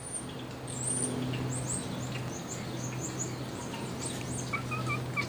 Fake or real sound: real